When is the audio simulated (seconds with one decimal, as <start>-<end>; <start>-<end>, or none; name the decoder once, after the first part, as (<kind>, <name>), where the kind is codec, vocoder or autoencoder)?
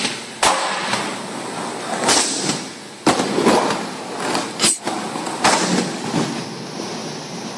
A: none